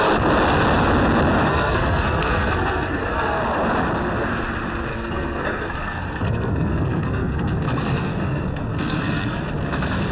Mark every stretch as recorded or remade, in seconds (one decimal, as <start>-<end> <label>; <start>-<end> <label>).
0.0-1.5 recorded; 1.5-3.4 remade; 3.4-4.9 recorded; 4.9-9.4 remade; 9.4-10.1 recorded